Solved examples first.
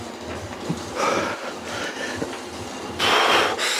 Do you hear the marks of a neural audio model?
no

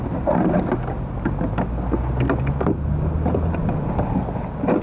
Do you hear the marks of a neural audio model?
no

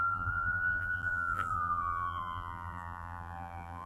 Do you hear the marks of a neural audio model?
yes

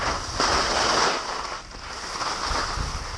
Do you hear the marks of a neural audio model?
no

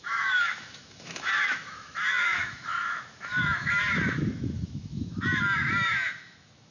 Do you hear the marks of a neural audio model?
yes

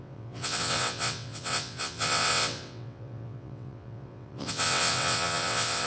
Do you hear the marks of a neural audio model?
yes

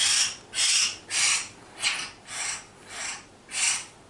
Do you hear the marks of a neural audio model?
no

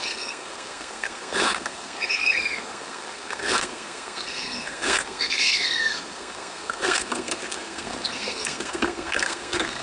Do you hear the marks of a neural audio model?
yes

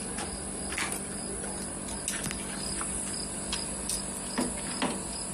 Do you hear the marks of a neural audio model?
no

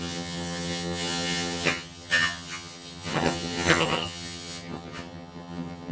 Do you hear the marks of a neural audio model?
yes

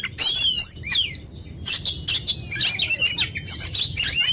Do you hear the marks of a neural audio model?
no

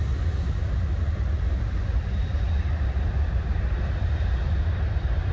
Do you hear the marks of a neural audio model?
no